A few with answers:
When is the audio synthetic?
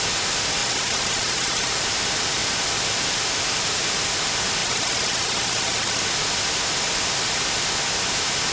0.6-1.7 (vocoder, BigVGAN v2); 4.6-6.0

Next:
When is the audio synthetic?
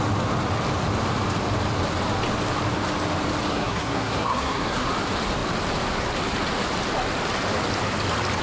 3.5-4.9 (codec, SNAC)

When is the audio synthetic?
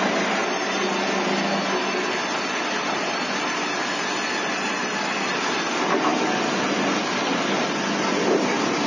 none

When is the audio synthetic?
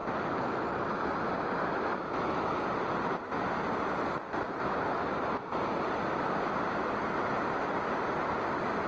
none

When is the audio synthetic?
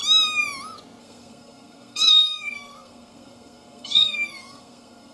1.0-5.1 (codec, SNAC)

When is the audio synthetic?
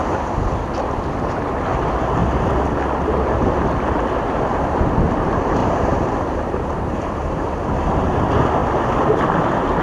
0.0-0.5 (vocoder, BigVGAN v2); 5.6-8.0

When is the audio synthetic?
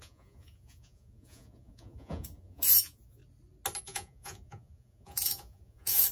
0.0-3.2 (vocoder, Vocos); 3.8-6.1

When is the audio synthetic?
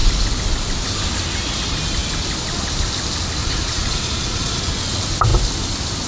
3.4-4.7 (vocoder, Vocos)